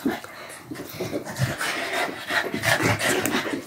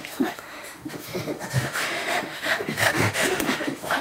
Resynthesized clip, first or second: second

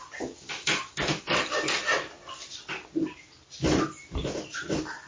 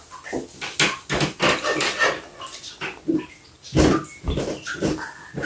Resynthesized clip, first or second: first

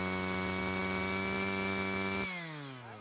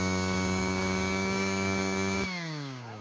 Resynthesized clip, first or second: second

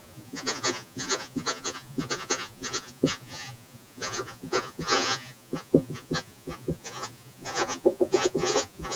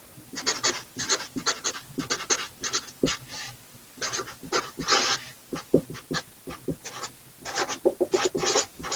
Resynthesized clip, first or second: first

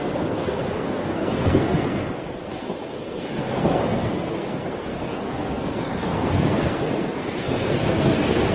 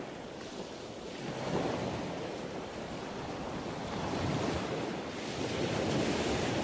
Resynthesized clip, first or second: first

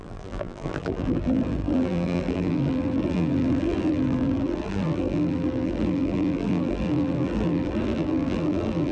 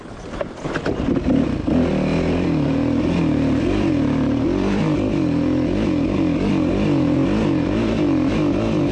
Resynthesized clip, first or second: first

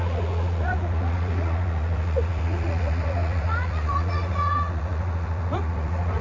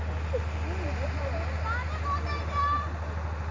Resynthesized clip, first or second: first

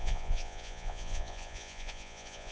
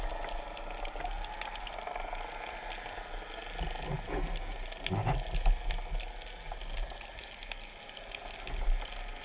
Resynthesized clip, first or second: first